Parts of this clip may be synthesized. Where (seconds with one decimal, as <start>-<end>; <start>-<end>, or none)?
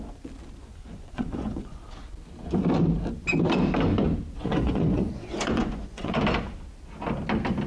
0.6-1.8; 4.4-6.2